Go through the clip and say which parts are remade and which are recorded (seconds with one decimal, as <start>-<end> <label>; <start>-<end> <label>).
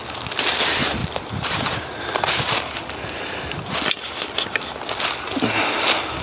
0.0-1.0 recorded; 1.0-2.8 remade; 2.8-6.2 recorded